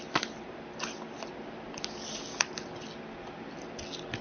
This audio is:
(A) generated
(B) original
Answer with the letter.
B